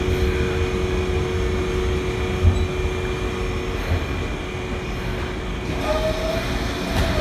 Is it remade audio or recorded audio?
recorded